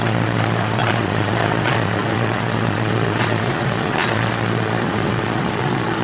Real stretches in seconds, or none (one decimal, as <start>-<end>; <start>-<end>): none